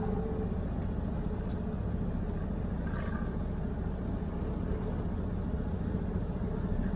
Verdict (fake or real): real